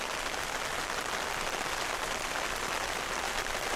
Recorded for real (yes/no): yes